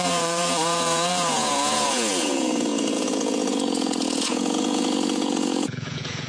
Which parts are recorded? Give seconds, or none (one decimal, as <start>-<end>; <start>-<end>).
none